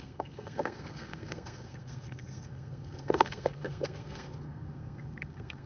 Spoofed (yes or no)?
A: yes